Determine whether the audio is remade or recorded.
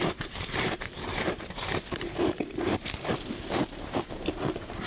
remade